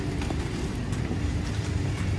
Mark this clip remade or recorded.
remade